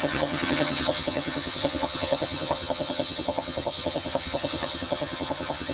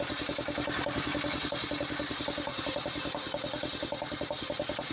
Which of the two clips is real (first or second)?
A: second